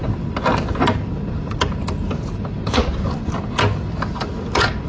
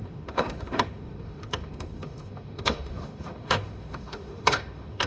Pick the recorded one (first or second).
first